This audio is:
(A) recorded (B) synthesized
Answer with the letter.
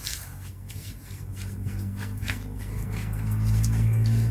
B